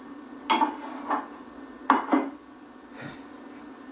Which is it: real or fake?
real